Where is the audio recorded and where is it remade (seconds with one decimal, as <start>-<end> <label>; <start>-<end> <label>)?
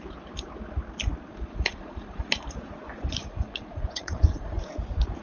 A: 0.0-1.3 recorded; 1.3-2.3 remade; 2.3-3.2 recorded; 3.2-4.7 remade; 4.7-5.2 recorded